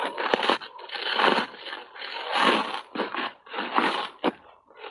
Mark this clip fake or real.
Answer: real